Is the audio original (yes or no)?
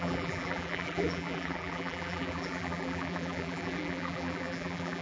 no